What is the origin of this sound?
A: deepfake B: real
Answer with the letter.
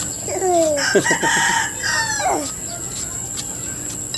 B